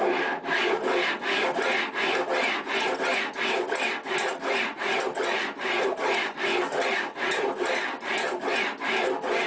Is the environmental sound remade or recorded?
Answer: recorded